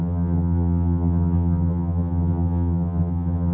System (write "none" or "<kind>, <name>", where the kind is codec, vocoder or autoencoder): vocoder, HiFi-GAN